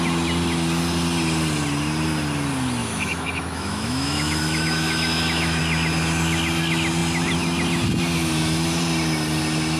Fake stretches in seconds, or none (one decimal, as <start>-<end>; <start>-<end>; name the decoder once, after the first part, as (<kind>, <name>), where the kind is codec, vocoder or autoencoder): 2.8-5.6 (autoencoder, DAC-VAE)